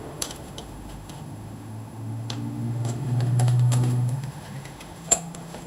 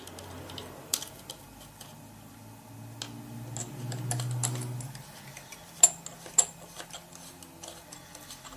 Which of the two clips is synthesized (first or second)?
first